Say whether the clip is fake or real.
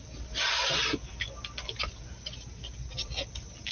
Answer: real